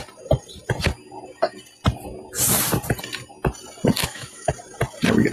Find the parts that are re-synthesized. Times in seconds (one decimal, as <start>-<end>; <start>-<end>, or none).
4.0-4.5